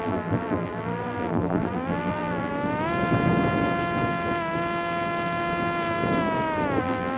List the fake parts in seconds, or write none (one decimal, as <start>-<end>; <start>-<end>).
0.0-2.5; 6.8-7.2